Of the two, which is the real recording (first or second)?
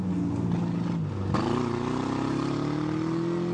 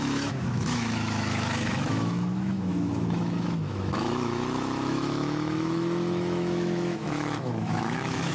first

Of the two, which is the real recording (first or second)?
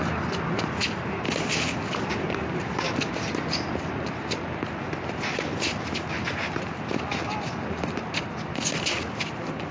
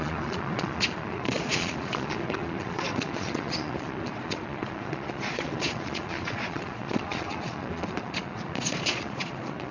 first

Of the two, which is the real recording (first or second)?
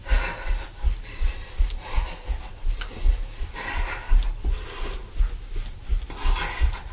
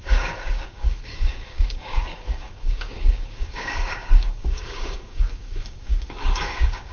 first